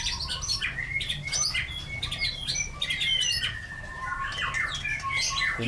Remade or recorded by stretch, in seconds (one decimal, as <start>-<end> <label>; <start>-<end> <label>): 0.0-5.7 recorded